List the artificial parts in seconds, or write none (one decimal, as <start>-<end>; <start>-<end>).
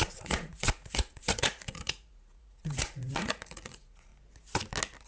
0.0-4.1